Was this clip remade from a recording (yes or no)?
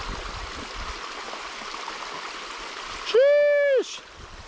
no